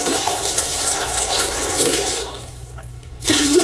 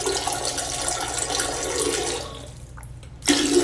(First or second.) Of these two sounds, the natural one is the second